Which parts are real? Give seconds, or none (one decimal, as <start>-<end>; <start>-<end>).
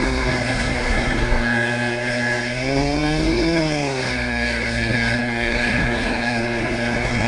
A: none